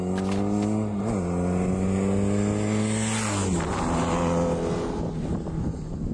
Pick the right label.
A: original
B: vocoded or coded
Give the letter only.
A